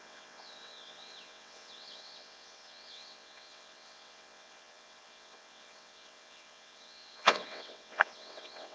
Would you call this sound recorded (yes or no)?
no